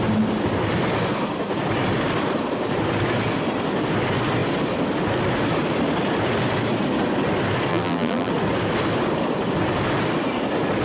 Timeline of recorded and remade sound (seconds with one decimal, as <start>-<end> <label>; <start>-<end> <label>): 0.0-7.7 recorded; 7.7-8.3 remade; 8.3-10.8 recorded